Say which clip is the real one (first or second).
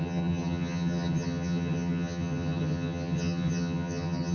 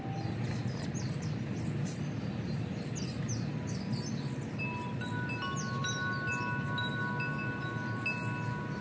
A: second